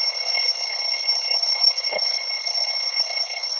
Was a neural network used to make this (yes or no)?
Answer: yes